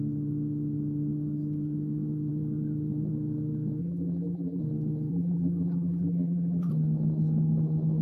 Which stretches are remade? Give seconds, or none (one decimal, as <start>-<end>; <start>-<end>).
3.8-4.6; 5.1-6.7